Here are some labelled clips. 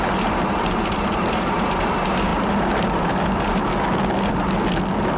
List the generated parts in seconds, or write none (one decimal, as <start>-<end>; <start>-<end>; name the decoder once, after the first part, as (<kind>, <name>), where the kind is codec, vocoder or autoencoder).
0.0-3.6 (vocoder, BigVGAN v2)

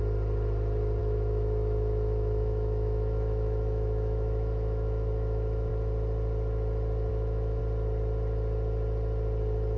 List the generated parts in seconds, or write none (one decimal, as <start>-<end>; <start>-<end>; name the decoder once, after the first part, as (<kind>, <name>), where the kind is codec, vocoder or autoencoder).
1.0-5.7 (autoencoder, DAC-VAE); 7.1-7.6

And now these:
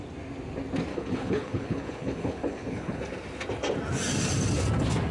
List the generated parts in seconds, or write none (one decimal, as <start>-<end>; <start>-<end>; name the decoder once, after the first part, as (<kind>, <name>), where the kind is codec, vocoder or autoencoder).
0.9-3.0 (codec, HILCodec)

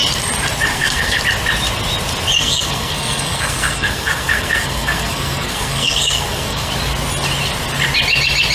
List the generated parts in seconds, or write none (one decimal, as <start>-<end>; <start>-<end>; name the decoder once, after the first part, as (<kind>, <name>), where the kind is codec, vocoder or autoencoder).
0.7-1.2 (codec, SNAC); 2.4-6.7

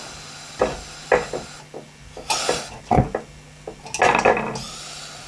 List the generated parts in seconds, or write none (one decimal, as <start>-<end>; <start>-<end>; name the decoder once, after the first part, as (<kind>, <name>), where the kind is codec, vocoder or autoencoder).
none